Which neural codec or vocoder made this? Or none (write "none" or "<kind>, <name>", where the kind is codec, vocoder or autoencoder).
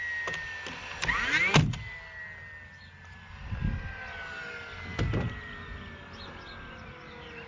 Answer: none